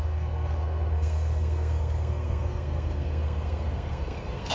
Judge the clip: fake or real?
fake